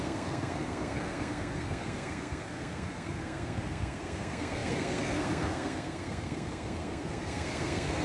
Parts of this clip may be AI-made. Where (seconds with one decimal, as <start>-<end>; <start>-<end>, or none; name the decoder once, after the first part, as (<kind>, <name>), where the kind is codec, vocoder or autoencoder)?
0.0-8.0 (codec, SNAC)

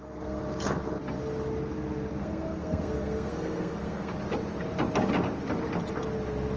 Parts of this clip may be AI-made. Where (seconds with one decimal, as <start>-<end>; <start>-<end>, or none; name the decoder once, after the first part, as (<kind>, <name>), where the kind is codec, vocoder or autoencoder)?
0.0-0.4 (codec, SNAC); 2.2-4.1